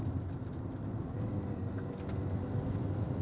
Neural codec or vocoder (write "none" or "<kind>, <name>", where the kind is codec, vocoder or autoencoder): none